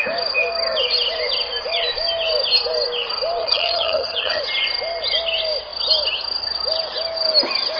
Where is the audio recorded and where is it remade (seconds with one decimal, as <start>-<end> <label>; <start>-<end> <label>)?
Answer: 0.0-3.4 recorded; 3.4-4.4 remade; 4.4-7.8 recorded